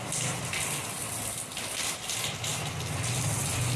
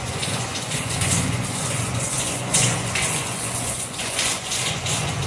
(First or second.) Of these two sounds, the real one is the first